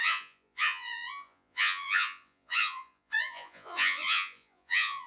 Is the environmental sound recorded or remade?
remade